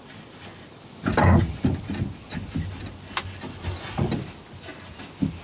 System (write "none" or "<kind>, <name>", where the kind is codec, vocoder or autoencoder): none